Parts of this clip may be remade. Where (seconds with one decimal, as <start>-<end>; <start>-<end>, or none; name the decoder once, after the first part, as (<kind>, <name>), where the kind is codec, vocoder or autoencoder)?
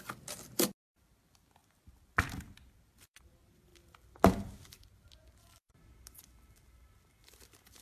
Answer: none